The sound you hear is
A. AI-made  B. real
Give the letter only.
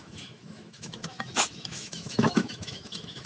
A